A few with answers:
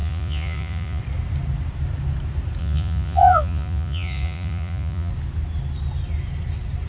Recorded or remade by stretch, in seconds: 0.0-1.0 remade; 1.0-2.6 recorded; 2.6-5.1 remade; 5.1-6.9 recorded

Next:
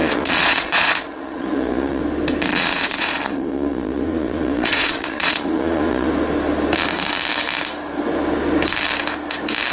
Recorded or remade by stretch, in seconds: 0.0-2.0 remade; 2.0-2.5 recorded; 2.5-6.1 remade; 6.1-9.7 recorded

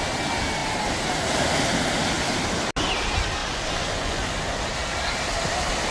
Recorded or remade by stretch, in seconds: 0.0-3.4 recorded; 3.4-4.6 remade; 4.6-5.9 recorded

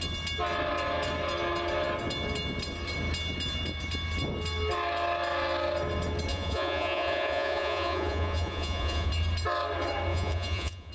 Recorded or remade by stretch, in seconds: 0.0-6.3 recorded; 6.3-9.1 remade; 9.1-10.1 recorded; 10.1-10.9 remade

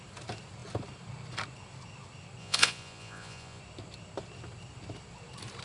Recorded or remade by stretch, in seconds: 0.0-2.4 recorded; 2.4-3.6 remade; 3.6-5.6 recorded

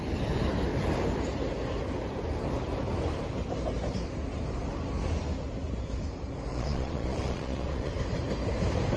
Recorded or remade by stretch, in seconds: 0.0-6.5 recorded; 6.5-7.9 remade; 7.9-9.0 recorded

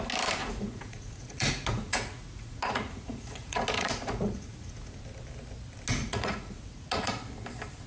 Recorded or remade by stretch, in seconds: 0.0-0.4 recorded; 0.4-5.0 remade; 5.0-6.0 recorded; 6.0-7.1 remade; 7.1-7.9 recorded

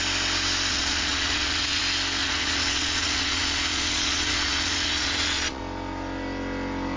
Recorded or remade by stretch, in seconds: 0.0-0.7 recorded; 0.7-1.8 remade; 1.8-2.2 recorded; 2.2-5.6 remade; 5.6-7.0 recorded